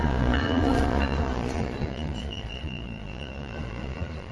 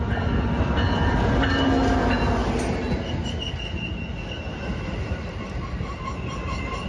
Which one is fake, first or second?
first